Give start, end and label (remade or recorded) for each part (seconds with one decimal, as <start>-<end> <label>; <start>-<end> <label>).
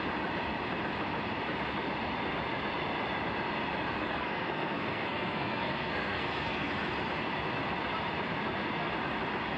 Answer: 0.0-4.0 recorded; 4.0-6.7 remade; 6.7-9.6 recorded